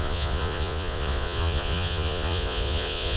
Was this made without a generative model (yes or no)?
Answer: no